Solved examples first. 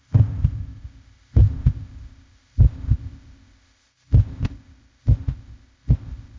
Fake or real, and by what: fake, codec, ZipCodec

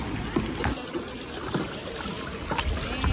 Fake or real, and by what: real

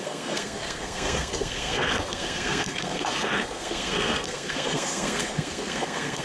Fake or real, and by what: fake, codec, SNAC